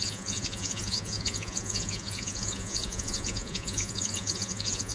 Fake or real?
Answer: fake